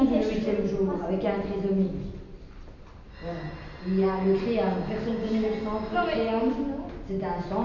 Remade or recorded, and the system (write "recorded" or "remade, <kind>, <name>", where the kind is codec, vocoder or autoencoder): recorded